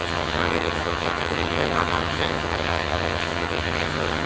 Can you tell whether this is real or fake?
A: fake